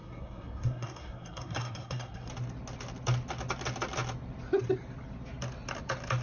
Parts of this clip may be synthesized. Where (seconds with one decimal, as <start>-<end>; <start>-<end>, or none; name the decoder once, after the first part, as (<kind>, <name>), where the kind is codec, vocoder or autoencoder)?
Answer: 0.0-2.3 (codec, SNAC)